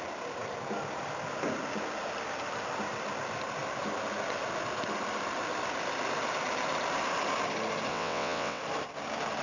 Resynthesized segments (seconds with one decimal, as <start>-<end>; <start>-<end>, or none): 7.9-8.6